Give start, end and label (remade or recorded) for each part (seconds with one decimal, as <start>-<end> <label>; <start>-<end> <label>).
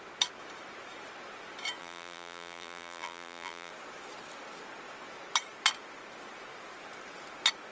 0.0-1.8 recorded; 1.8-3.7 remade; 3.7-7.7 recorded